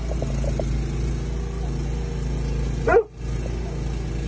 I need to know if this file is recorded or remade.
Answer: recorded